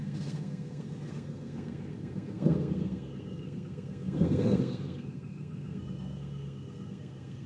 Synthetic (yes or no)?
yes